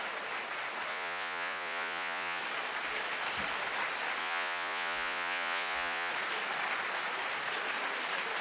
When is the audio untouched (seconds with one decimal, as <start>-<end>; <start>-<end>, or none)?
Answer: 0.0-0.9; 2.4-4.2; 6.1-8.4